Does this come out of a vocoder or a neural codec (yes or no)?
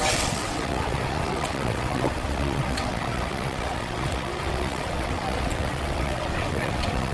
yes